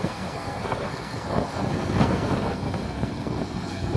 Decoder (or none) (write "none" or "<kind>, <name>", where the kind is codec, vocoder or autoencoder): codec, SNAC